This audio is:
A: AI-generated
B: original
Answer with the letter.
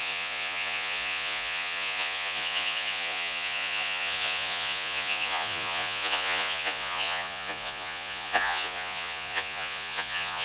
A